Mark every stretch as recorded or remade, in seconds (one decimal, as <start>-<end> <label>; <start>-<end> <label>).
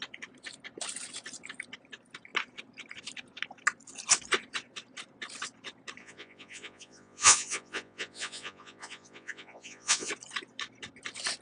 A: 0.0-6.0 recorded; 6.0-10.1 remade; 10.1-11.4 recorded